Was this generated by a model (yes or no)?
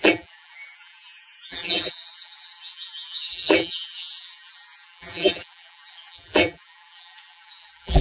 yes